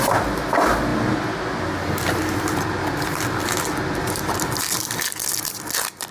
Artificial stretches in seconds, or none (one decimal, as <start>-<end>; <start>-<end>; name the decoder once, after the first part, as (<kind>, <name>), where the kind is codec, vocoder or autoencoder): none